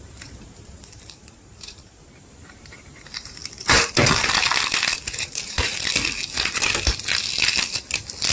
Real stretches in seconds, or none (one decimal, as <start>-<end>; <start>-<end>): 3.4-5.2; 5.7-8.3